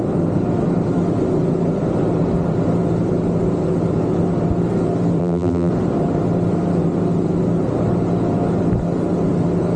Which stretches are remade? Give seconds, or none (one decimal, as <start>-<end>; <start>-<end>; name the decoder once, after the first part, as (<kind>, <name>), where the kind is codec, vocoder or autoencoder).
5.2-5.7 (vocoder, BigVGAN v2)